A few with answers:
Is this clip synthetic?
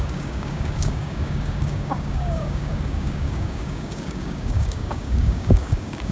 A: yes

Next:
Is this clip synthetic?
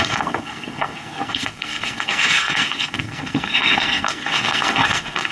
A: yes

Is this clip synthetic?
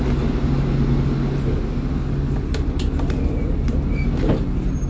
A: no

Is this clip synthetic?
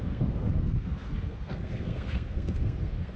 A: yes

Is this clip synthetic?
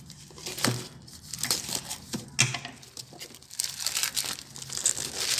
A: no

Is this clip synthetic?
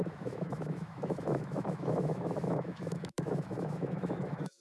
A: yes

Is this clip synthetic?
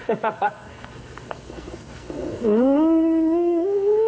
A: yes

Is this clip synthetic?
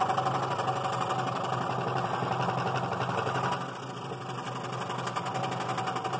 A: no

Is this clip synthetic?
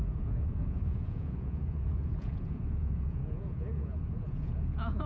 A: yes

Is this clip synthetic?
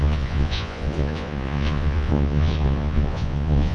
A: yes